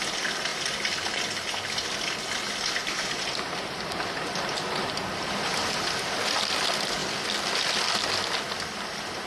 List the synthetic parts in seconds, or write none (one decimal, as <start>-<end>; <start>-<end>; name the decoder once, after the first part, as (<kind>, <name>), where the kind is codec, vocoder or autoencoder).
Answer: 2.8-6.4 (vocoder, BigVGAN v2)